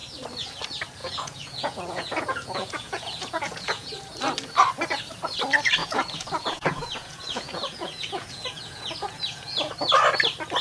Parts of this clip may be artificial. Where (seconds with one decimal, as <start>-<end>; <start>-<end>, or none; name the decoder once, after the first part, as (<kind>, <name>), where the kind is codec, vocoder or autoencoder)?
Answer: 1.0-3.9 (vocoder, Vocos); 5.8-9.7